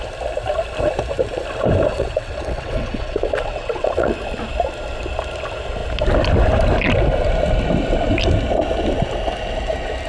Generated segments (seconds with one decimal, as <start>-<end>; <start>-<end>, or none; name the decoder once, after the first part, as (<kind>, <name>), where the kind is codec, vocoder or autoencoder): 1.9-4.1 (vocoder, WaveNeXt)